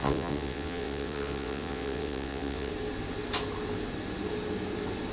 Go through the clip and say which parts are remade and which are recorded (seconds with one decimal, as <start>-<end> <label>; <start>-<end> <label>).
0.0-2.7 remade; 2.7-5.1 recorded